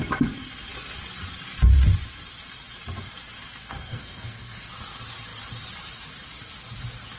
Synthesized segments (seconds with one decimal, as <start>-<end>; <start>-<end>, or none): 3.6-4.7